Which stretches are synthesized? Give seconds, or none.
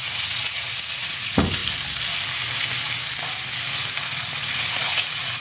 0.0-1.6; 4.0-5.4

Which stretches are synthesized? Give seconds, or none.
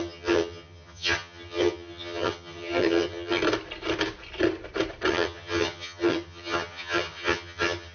0.0-3.4; 5.1-7.9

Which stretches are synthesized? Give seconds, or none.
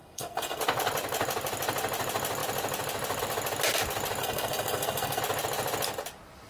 0.0-0.6; 4.2-5.2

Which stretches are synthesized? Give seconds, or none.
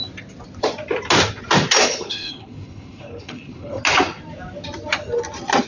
1.8-3.8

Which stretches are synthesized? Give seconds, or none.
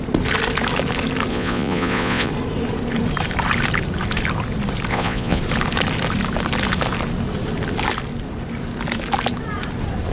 1.3-2.3; 4.9-5.4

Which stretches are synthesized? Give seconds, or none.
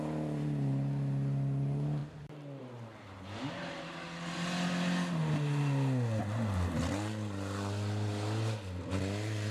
none